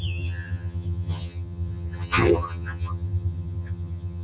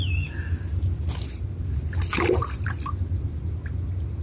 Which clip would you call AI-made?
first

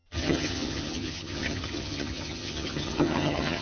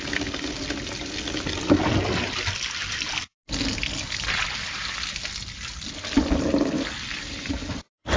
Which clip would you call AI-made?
first